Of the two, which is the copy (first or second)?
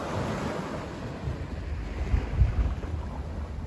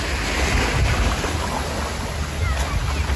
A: first